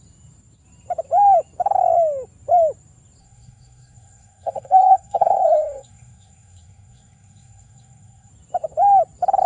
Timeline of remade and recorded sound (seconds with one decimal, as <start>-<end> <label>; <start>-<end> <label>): 0.0-3.2 recorded; 3.2-8.3 remade; 8.3-9.5 recorded